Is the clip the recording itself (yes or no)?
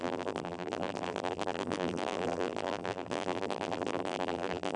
no